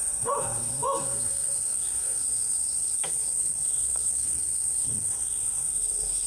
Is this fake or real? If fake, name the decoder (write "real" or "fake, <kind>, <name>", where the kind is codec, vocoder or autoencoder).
fake, codec, SNAC